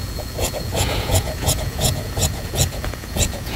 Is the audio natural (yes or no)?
no